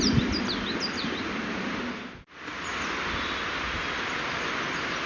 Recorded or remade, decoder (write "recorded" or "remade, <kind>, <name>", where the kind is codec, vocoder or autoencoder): recorded